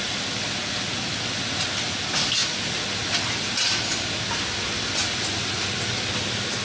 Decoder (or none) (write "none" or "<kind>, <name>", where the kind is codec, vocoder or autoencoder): none